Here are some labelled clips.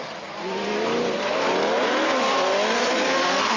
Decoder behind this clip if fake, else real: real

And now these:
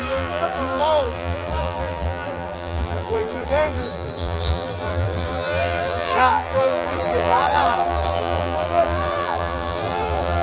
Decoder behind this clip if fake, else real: fake, vocoder, BigVGAN v2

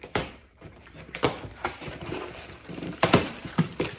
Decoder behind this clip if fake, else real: fake, vocoder, BigVGAN v2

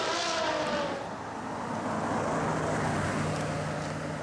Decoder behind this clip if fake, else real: real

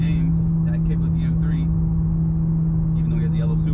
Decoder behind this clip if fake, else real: real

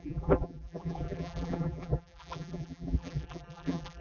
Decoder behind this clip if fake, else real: fake, vocoder, BigVGAN v2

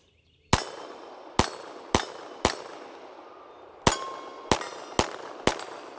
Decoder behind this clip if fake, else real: real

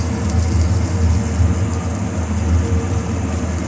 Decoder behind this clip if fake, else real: real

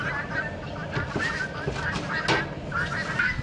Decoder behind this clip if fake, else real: real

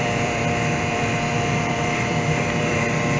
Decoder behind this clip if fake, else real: fake, vocoder, BigVGAN v2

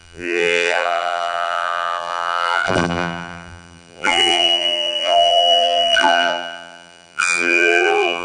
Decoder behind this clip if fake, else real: fake, vocoder, BigVGAN v2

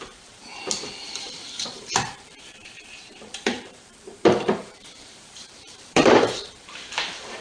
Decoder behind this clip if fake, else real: fake, vocoder, BigVGAN v2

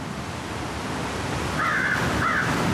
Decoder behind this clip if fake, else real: real